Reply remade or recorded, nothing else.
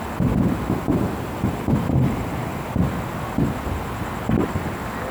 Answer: recorded